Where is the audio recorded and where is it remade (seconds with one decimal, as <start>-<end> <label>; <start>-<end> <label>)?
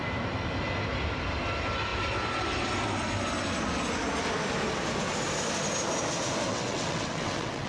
0.0-6.5 recorded; 6.5-7.7 remade